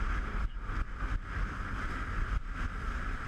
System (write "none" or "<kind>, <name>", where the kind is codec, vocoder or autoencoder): none